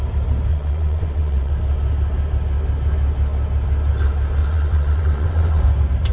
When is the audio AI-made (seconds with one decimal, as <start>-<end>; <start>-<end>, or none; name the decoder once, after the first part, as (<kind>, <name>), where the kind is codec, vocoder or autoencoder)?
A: 0.5-1.5 (vocoder, WaveNeXt); 4.4-5.6